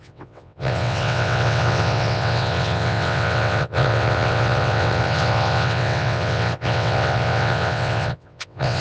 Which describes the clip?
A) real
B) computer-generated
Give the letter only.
B